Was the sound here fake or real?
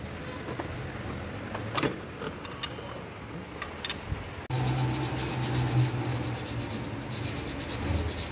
real